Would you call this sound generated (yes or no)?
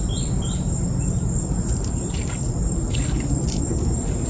no